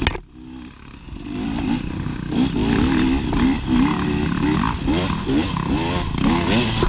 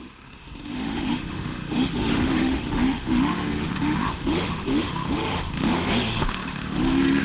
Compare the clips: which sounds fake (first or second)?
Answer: second